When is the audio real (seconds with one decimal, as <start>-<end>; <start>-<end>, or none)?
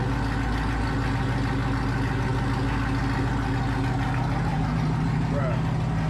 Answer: 0.0-4.5; 5.4-6.1